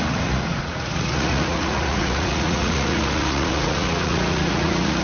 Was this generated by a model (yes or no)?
yes